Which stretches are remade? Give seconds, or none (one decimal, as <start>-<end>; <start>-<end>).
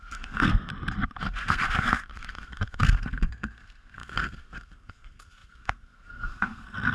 0.0-0.7; 1.2-6.9